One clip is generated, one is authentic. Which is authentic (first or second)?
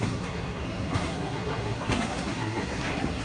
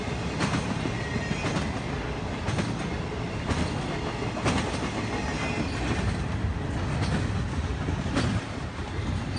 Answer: second